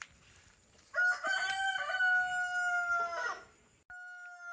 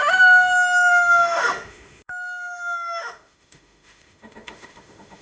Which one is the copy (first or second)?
second